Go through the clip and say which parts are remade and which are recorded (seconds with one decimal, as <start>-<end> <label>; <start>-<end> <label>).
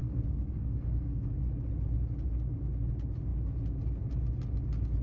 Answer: 0.0-1.3 remade; 1.3-5.0 recorded